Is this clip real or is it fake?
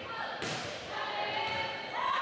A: fake